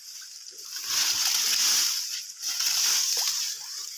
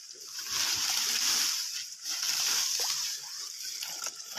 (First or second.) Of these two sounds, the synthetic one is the second